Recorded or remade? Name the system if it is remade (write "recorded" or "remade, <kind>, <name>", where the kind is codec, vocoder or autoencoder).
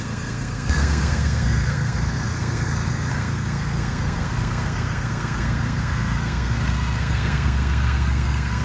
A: remade, codec, SNAC